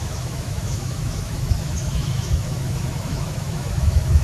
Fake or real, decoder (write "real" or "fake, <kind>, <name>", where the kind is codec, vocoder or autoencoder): fake, autoencoder, DAC-VAE